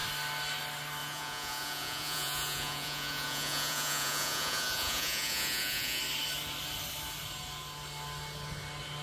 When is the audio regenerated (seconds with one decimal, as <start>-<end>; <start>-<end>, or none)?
1.0-6.0